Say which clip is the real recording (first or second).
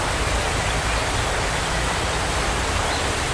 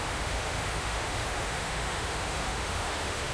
first